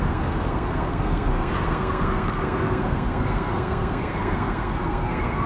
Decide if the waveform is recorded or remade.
remade